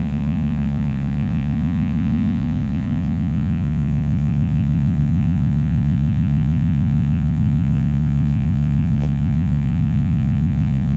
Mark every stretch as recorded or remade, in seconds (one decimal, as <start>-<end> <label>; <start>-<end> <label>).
0.0-11.0 remade